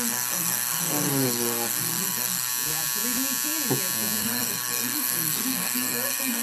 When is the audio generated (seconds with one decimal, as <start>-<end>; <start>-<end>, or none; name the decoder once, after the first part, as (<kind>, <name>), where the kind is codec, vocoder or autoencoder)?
0.0-2.5 (codec, SNAC); 4.2-6.4